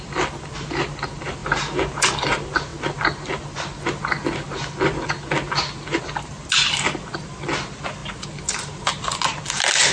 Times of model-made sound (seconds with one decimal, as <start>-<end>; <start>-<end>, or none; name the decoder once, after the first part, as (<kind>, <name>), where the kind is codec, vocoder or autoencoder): none